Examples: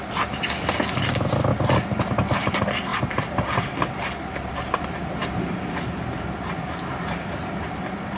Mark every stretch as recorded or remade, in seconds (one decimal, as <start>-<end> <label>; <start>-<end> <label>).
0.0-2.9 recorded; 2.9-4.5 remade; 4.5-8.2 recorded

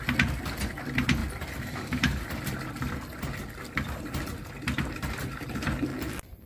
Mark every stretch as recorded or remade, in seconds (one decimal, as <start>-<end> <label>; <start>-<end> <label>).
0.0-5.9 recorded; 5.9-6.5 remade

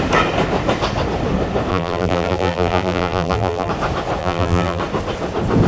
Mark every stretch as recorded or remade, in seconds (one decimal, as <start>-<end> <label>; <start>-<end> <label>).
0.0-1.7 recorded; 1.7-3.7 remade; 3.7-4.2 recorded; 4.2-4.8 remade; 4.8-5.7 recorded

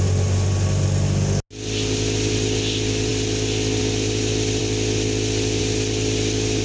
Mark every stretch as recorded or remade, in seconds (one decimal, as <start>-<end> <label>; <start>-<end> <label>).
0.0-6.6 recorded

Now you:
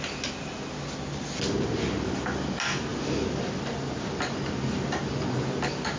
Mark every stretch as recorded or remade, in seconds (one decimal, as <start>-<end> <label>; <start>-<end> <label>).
0.0-2.9 recorded; 2.9-3.5 remade; 3.5-6.0 recorded